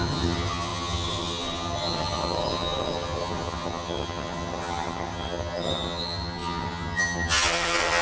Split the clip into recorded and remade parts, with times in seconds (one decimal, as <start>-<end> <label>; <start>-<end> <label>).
0.0-8.0 remade